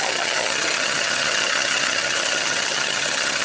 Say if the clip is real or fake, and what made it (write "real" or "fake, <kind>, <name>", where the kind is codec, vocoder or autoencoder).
fake, vocoder, HiFi-GAN